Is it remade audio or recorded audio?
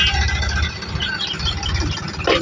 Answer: recorded